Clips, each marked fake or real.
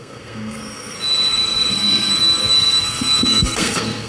fake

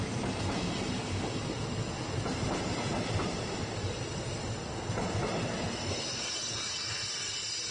real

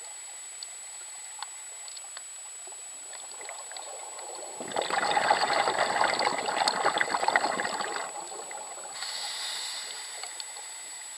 real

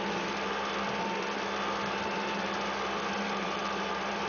real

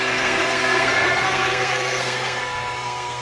fake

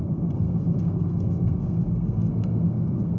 fake